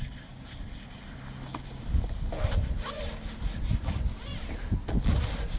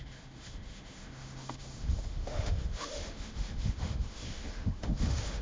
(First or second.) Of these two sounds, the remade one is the second